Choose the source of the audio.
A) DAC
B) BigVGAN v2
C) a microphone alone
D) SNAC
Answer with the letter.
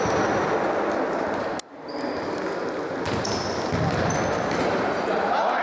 C